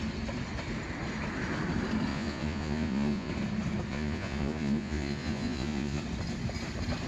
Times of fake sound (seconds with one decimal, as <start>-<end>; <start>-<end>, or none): 2.1-3.3; 3.9-6.0